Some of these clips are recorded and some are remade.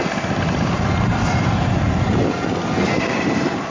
recorded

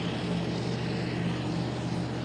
recorded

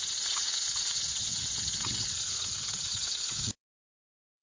remade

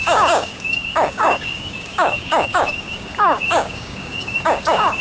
remade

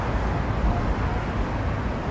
recorded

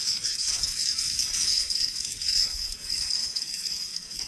remade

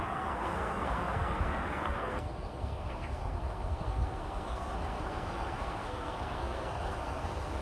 remade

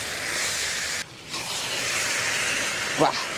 recorded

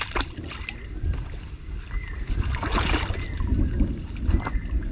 recorded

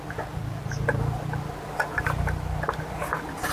recorded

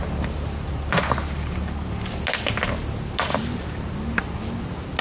recorded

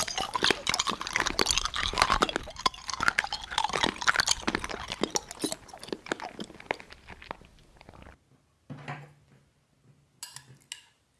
recorded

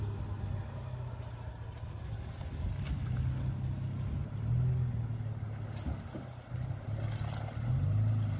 recorded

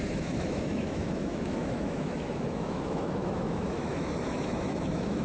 remade